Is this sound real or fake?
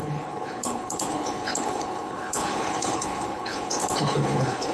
fake